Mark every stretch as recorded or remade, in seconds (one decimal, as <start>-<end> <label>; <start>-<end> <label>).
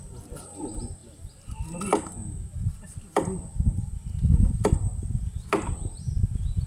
0.0-6.7 recorded